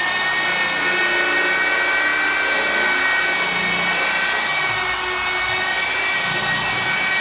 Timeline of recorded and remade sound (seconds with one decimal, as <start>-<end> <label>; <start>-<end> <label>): 0.0-7.2 recorded